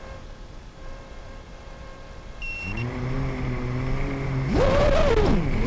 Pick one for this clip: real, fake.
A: fake